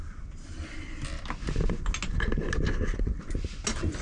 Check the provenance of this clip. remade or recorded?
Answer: recorded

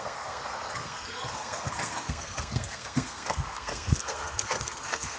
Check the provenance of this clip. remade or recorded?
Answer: remade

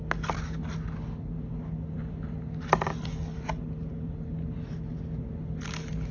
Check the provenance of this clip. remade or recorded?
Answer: recorded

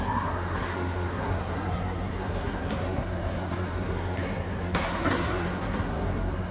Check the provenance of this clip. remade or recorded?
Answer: remade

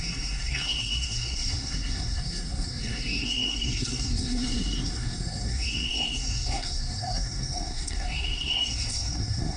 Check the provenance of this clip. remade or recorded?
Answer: remade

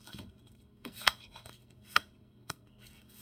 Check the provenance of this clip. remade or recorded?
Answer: remade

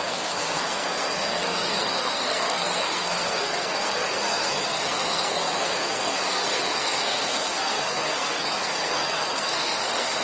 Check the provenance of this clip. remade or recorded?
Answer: remade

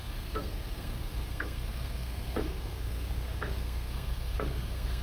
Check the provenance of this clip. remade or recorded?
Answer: remade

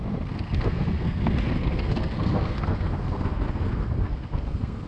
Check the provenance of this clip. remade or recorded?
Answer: remade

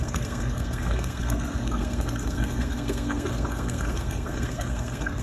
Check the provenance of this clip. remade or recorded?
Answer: remade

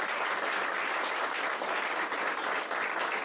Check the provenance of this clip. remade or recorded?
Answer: recorded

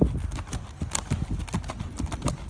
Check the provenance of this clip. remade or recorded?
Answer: recorded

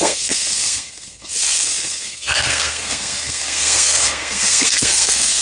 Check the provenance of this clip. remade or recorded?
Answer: remade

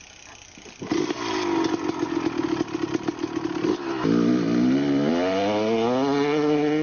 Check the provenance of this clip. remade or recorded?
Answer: recorded